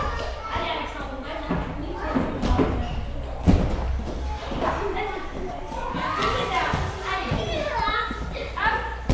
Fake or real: real